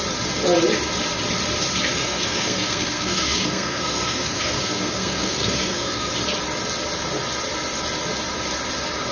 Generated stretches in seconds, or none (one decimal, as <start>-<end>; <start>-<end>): 1.9-6.1